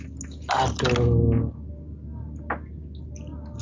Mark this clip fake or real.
real